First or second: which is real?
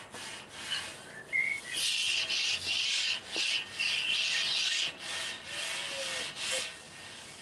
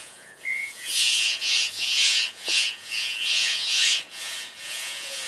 first